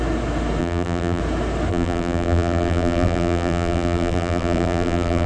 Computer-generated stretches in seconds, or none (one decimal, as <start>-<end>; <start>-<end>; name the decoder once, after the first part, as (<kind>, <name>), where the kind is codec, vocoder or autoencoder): 0.6-1.2 (vocoder, BigVGAN v2); 1.7-5.3

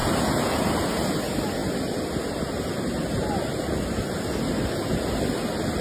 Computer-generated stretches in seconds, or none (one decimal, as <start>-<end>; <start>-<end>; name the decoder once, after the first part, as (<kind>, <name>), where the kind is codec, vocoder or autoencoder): none

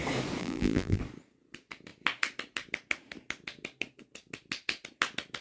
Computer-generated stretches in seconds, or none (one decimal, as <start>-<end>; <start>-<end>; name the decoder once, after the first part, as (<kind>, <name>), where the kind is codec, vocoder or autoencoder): 0.4-1.0 (vocoder, BigVGAN v2)

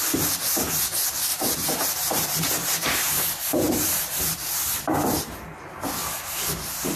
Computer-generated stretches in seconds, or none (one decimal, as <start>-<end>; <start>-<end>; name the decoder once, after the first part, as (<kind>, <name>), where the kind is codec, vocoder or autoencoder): 1.3-4.2 (vocoder, BigVGAN v2)

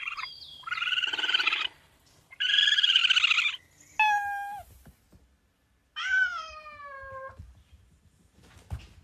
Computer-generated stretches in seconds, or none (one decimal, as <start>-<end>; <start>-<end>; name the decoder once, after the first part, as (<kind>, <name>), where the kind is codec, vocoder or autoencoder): 0.0-3.0 (vocoder, BigVGAN v2); 6.5-9.0

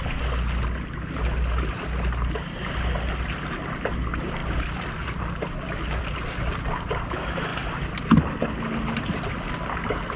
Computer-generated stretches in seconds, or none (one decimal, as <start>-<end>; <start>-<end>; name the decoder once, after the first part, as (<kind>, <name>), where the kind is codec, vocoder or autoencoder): 4.4-5.2 (vocoder, BigVGAN v2)